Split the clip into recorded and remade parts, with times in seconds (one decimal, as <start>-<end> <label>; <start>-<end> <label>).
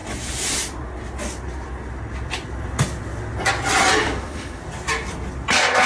0.0-4.0 recorded; 4.0-4.6 remade; 4.6-5.9 recorded